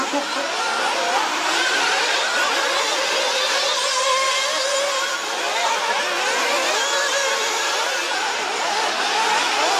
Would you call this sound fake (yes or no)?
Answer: no